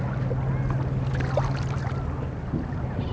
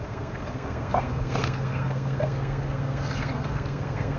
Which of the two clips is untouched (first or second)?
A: first